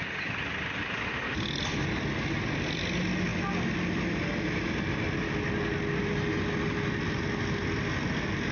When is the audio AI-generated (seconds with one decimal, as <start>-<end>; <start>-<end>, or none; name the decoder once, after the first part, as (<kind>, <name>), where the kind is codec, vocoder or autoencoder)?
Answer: none